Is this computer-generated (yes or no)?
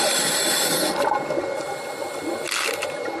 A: no